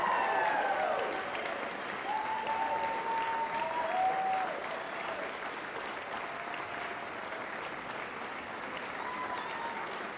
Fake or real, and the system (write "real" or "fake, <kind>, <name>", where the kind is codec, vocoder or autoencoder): real